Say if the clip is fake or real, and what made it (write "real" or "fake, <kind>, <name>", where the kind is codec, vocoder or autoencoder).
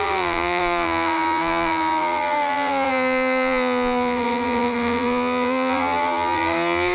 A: fake, vocoder, BigVGAN v2